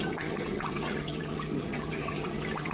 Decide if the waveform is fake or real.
fake